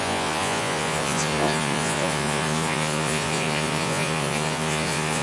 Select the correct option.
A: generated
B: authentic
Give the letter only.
A